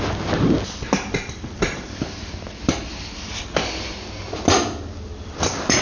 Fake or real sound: real